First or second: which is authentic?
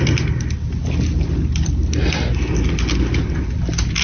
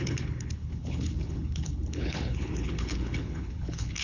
first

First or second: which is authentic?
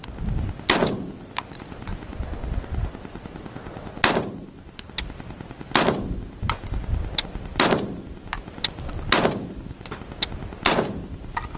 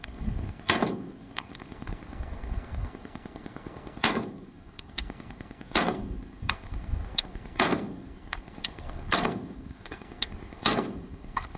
first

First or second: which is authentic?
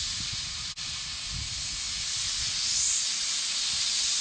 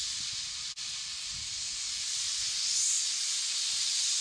first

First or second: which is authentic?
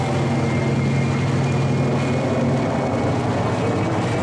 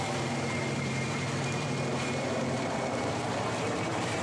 first